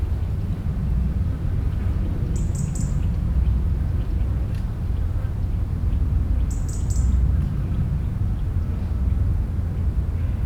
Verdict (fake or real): real